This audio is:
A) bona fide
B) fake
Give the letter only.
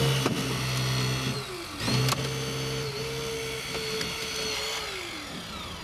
A